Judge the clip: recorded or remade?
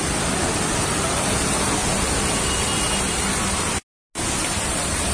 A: recorded